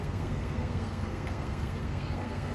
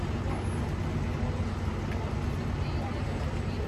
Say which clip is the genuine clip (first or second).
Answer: second